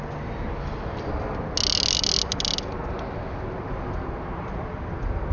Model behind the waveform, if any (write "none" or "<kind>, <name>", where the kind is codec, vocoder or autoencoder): none